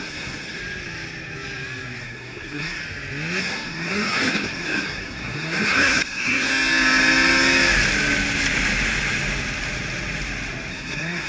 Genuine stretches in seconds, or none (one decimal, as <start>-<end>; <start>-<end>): 0.6-2.0; 2.8-3.4; 6.5-10.7